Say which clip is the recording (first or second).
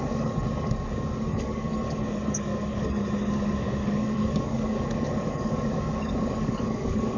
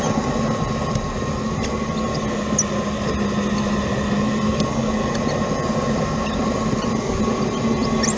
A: second